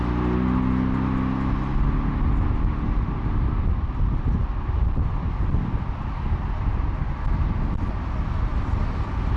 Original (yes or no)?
yes